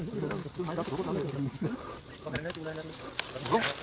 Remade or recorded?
recorded